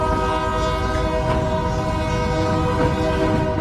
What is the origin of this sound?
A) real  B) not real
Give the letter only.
A